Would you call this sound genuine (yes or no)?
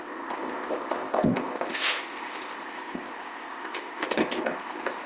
no